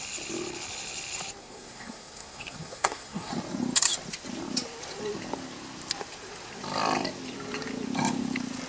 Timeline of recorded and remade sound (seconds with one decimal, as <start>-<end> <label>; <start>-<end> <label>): 0.0-1.4 recorded; 1.4-3.3 remade; 3.3-8.7 recorded